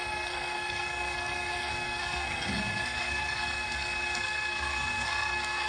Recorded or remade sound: remade